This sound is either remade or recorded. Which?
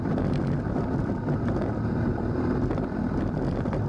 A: recorded